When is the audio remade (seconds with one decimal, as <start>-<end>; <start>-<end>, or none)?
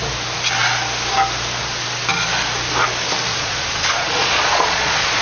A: 3.3-5.2